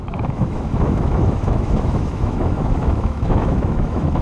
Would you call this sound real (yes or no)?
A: no